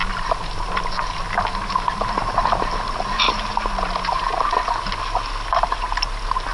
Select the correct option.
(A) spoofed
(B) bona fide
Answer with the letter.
B